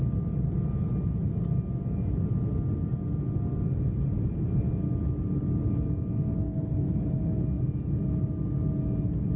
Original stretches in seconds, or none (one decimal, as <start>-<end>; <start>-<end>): 0.0-6.3; 7.4-9.4